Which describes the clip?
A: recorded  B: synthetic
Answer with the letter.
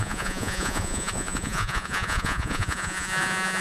B